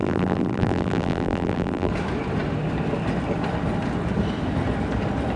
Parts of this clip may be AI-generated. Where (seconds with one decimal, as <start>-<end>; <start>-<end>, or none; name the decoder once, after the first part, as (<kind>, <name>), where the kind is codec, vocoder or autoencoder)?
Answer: 0.0-1.9 (vocoder, BigVGAN v2)